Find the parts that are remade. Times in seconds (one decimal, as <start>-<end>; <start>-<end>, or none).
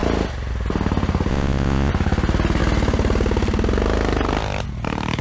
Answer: 1.3-1.9